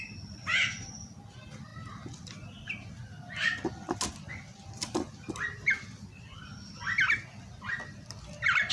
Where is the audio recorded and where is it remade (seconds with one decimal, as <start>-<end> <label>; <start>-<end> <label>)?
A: 0.0-8.7 recorded